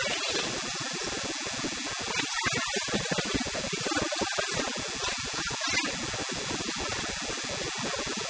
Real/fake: real